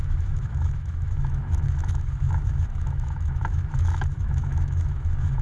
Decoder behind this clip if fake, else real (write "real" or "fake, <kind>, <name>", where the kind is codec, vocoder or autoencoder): fake, autoencoder, DAC-VAE